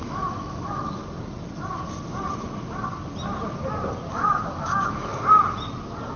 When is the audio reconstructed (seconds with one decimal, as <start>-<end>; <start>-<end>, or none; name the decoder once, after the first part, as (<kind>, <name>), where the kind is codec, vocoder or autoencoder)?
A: 0.0-1.0 (autoencoder, DAC-VAE); 4.1-5.1